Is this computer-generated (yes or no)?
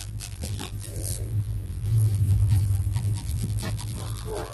yes